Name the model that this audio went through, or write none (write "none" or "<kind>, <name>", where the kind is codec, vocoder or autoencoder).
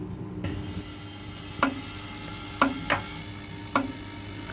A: none